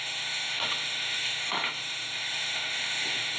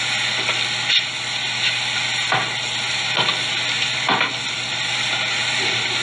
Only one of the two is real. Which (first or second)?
second